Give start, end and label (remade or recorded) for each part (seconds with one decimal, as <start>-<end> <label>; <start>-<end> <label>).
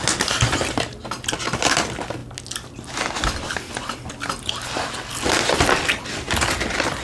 0.0-7.0 recorded